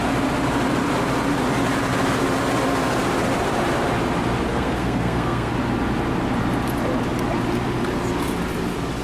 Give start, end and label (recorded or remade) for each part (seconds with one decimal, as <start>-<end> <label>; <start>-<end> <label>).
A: 0.0-4.5 recorded; 4.5-5.5 remade; 5.5-9.0 recorded